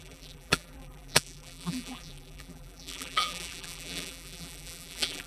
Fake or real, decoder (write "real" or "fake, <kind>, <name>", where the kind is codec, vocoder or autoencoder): fake, vocoder, BigVGAN v2